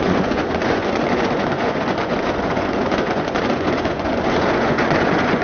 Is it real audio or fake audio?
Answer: fake